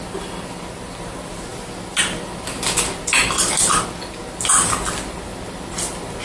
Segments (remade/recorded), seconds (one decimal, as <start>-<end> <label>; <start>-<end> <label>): 0.0-6.2 recorded